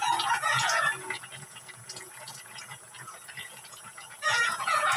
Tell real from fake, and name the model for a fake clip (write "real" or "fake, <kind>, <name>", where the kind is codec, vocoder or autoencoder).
fake, vocoder, Vocos